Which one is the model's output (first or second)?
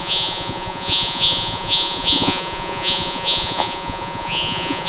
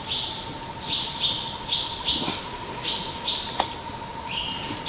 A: first